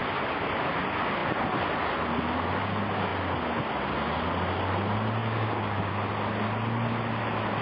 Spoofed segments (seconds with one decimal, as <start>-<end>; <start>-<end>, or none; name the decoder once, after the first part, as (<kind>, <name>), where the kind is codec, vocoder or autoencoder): 5.2-5.9 (codec, DAC)